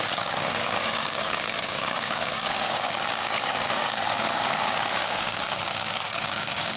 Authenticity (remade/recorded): remade